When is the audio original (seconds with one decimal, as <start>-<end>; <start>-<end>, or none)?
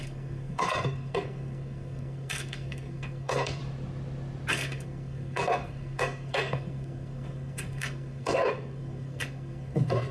3.6-4.5